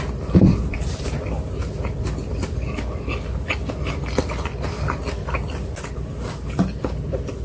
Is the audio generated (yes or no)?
no